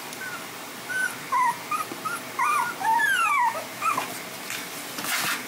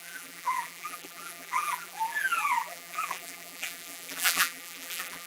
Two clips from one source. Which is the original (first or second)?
first